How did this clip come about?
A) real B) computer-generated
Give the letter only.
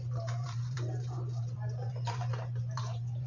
B